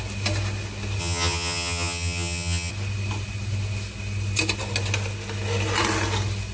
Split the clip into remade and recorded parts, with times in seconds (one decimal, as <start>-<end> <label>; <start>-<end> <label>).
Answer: 0.0-1.0 recorded; 1.0-2.7 remade; 2.7-6.5 recorded